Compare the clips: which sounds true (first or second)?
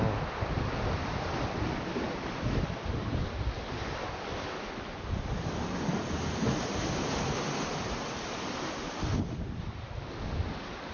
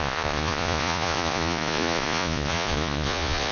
first